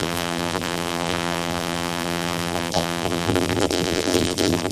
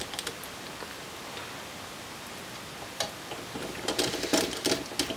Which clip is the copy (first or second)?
first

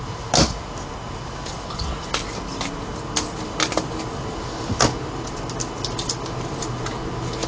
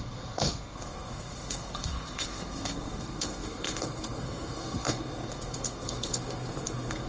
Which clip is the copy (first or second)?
second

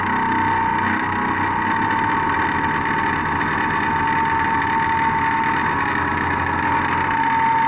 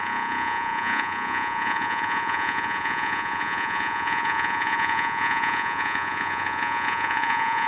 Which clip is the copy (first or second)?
second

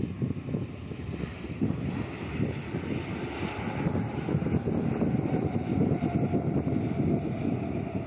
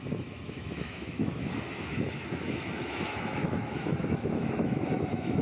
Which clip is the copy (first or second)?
second